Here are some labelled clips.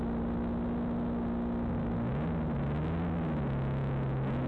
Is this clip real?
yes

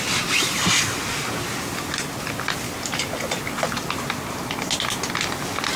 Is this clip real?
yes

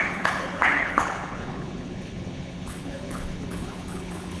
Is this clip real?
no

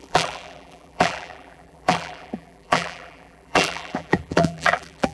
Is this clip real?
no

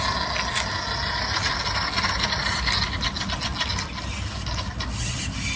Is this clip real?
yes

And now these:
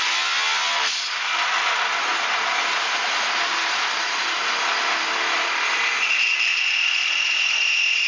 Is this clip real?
yes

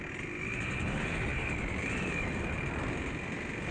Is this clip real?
yes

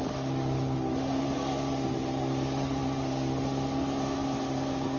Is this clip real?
yes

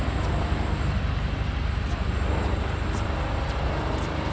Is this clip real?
yes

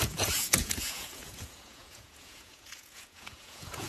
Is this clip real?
no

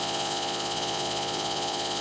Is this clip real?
no